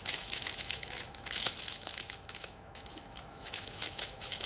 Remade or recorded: remade